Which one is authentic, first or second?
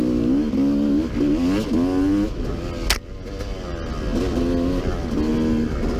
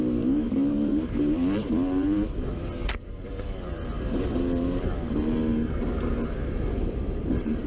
first